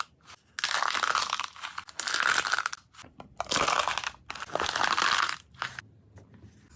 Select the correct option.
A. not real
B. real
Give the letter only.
B